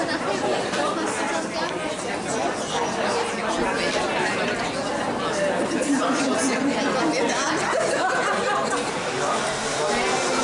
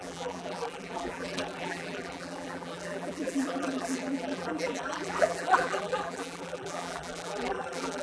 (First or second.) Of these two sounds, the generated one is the second